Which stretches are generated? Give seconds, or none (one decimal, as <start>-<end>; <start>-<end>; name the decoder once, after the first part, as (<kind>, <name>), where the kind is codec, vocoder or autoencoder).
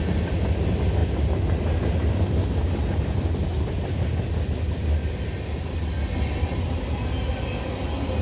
none